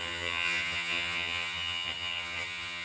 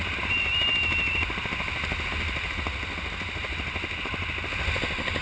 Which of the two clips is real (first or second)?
second